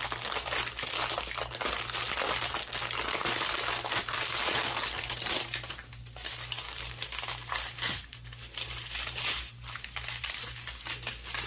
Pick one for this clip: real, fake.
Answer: real